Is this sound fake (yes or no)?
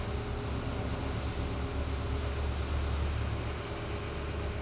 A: no